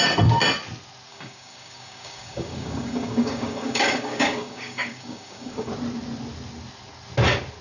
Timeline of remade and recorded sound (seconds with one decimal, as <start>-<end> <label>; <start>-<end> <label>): 0.0-1.1 recorded; 1.1-5.7 remade; 5.7-7.6 recorded